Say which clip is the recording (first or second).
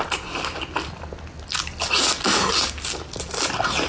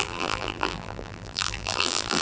first